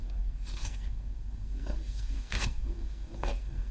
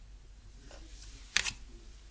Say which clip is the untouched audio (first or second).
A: second